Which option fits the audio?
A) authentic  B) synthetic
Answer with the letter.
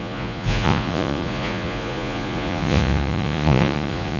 B